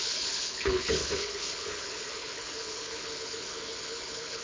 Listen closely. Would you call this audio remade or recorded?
remade